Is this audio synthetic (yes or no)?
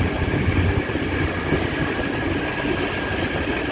no